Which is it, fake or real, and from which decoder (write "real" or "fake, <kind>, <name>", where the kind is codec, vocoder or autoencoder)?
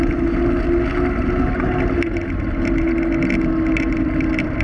real